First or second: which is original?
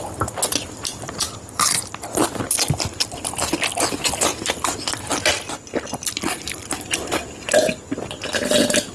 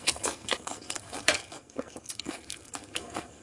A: first